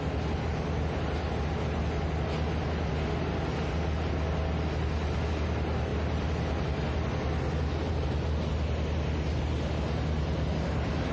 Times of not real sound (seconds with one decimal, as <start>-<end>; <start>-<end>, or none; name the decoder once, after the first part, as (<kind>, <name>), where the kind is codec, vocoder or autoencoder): none